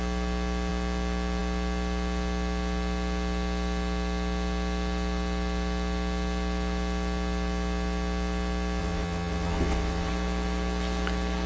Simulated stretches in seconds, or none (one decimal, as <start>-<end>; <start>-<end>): 8.8-10.1